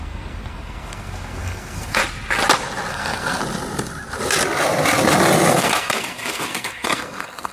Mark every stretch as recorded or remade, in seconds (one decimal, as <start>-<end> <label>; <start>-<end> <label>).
0.0-2.0 remade; 2.0-2.9 recorded; 2.9-3.4 remade; 3.4-5.5 recorded; 5.5-7.5 remade

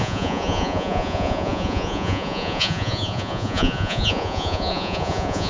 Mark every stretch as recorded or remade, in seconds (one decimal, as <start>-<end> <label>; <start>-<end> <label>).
0.0-5.5 remade

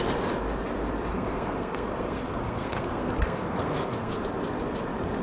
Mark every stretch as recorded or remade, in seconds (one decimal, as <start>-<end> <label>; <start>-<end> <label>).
0.0-1.1 recorded; 1.1-4.2 remade; 4.2-5.2 recorded